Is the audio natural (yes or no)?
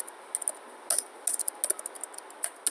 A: yes